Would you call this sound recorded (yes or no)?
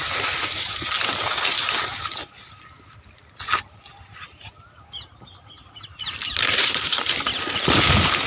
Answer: yes